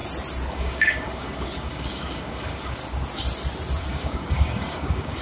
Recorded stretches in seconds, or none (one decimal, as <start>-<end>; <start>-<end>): 0.0-0.5; 2.8-3.8